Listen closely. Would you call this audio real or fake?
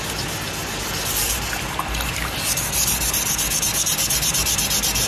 real